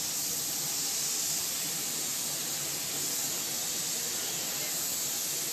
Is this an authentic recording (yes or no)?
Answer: yes